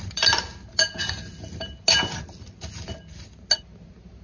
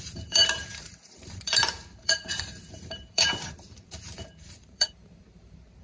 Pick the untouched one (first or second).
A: first